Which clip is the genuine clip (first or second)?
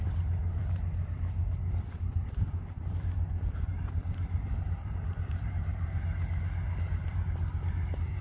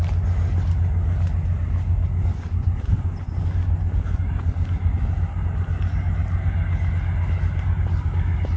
second